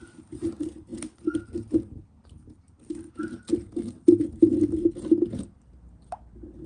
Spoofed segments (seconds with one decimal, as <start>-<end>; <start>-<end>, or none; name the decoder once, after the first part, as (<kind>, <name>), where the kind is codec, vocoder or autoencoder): none